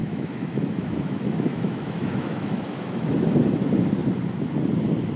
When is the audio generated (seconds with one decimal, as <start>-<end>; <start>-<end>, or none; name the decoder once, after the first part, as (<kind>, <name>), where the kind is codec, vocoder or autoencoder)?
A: 0.0-3.1 (autoencoder, DAC-VAE)